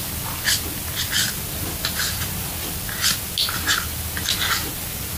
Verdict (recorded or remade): recorded